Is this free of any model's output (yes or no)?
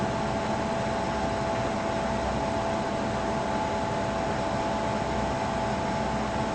yes